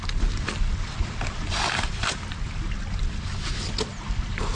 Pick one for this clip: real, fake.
fake